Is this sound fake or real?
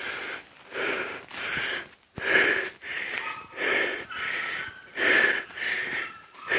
real